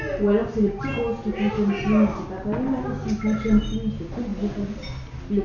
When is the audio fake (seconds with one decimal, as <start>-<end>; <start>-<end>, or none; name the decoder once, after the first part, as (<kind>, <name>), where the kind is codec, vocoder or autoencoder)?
none